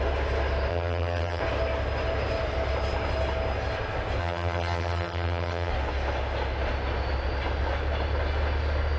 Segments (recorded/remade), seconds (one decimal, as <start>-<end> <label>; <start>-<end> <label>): 0.0-0.7 recorded; 0.7-1.4 remade; 1.4-4.2 recorded; 4.2-5.7 remade; 5.7-9.0 recorded